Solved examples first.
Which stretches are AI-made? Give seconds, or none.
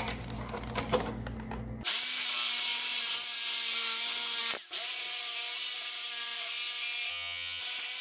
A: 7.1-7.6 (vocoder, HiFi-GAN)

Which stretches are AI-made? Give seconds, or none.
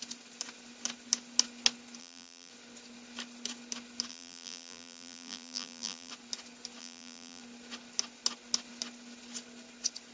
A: 2.0-2.5 (vocoder, BigVGAN v2); 4.1-6.1; 6.8-7.4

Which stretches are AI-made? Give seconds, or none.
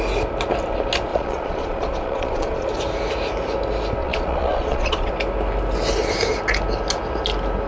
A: 1.1-2.7 (vocoder, Vocos); 4.0-5.1